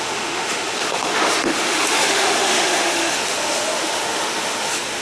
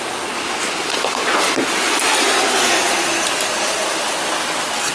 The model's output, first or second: first